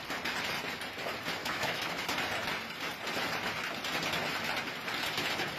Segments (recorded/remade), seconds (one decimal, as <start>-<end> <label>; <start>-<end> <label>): 0.0-1.4 recorded; 1.4-1.9 remade; 1.9-5.6 recorded